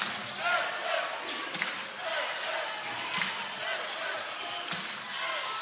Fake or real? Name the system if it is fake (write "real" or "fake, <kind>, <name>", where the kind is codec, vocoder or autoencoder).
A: real